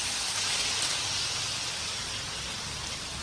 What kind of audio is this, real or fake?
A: real